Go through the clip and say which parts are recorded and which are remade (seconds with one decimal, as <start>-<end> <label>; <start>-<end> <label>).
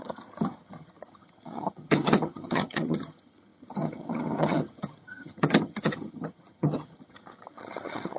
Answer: 0.0-8.2 remade